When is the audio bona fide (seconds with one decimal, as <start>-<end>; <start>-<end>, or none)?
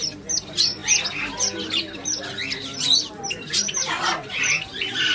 0.8-1.8; 2.7-3.3